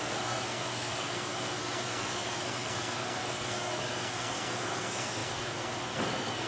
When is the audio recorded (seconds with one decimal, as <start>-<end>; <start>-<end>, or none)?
none